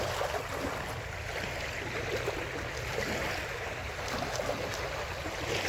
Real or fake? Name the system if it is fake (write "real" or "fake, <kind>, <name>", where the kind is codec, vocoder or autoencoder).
real